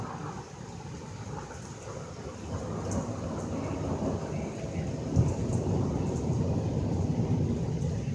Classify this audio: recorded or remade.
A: recorded